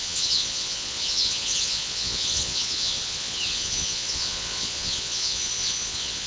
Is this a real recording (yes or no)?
no